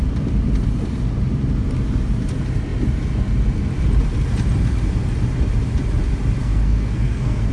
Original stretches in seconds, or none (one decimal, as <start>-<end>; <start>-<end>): 0.0-6.4

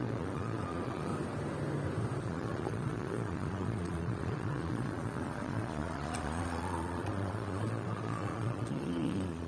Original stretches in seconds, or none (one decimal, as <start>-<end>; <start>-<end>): 1.1-2.2

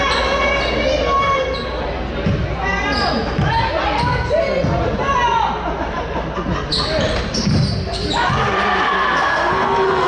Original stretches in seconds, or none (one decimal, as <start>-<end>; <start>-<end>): 0.0-9.3

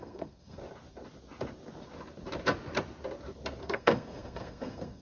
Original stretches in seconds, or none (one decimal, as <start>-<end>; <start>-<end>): 0.6-3.6

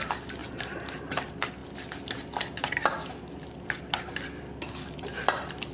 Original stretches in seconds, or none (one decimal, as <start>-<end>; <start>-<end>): 0.0-5.7